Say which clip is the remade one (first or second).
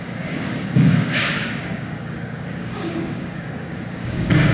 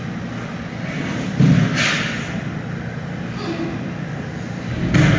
first